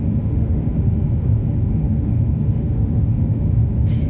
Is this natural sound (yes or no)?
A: no